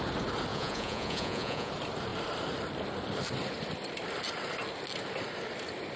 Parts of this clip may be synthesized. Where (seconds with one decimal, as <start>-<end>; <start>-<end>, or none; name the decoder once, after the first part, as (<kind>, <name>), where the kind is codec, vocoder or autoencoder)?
0.5-1.7 (vocoder, Vocos)

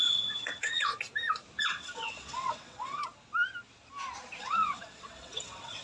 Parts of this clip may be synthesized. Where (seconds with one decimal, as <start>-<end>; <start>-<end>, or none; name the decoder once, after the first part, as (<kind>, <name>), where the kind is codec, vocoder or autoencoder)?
0.0-0.9 (vocoder, WaveNeXt); 1.6-3.0; 4.4-5.8

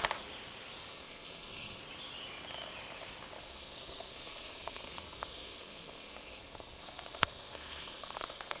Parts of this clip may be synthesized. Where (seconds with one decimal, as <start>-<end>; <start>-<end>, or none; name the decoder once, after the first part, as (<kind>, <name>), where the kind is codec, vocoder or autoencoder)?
0.9-1.8 (codec, SNAC); 3.4-8.6

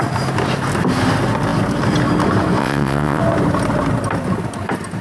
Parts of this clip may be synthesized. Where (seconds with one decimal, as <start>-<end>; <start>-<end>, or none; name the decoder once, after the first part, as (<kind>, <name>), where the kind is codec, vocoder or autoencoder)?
2.6-3.2 (vocoder, WaveNeXt)